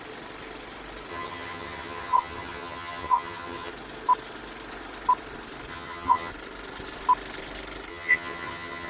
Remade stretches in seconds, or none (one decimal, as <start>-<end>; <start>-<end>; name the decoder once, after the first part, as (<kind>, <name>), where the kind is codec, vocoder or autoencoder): 1.1-3.7 (vocoder, HiFi-GAN); 5.7-6.3; 7.9-8.9